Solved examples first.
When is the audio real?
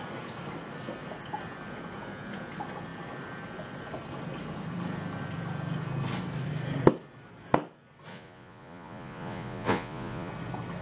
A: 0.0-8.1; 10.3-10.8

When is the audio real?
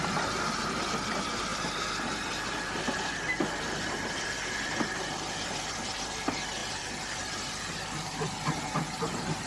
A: none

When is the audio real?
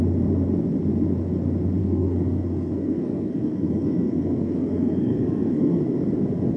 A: 0.0-1.8; 5.8-6.6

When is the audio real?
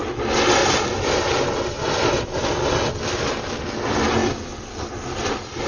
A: 0.0-0.6; 2.1-5.7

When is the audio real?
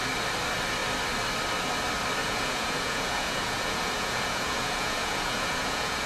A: 0.0-2.2